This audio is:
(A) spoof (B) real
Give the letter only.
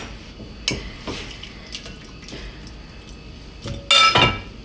B